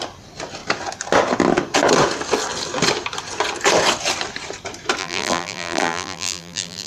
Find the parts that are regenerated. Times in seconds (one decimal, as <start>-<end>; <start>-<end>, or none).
5.0-6.9